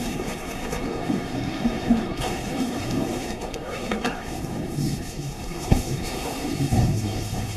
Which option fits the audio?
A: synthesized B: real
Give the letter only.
A